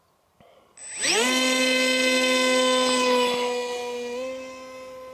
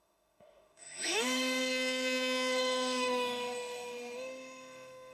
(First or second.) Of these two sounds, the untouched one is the first